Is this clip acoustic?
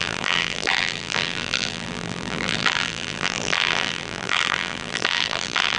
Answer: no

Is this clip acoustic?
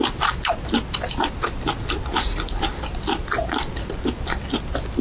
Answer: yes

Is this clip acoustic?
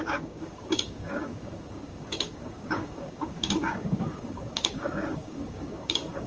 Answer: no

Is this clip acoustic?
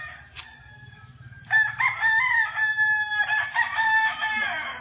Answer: yes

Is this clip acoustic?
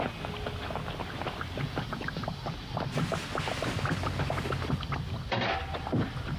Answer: yes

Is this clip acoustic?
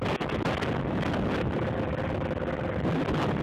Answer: yes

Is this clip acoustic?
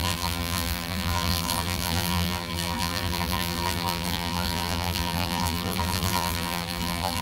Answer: no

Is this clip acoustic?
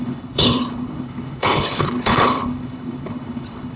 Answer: no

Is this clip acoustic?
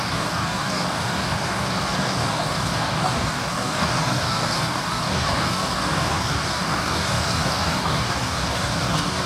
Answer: no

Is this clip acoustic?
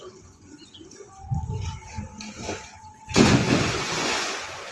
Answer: no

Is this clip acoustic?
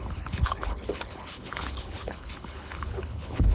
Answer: no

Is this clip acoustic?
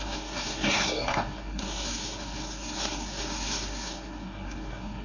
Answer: no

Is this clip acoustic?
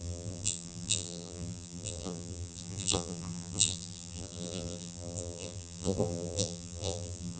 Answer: no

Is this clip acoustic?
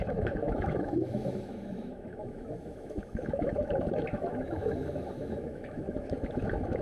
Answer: no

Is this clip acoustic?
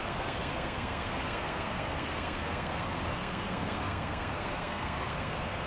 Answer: no